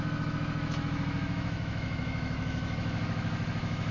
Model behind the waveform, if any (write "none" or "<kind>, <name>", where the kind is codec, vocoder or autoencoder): autoencoder, DAC-VAE